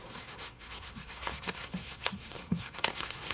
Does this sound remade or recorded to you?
remade